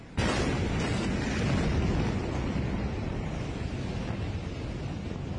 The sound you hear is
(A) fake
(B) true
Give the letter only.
B